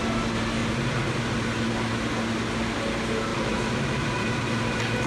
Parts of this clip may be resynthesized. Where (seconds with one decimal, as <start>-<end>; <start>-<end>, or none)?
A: 0.6-1.5; 3.3-5.1